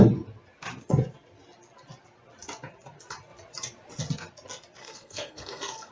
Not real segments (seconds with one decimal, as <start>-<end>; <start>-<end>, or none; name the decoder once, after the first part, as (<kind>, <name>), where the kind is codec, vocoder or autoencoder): 4.8-5.9 (codec, SNAC)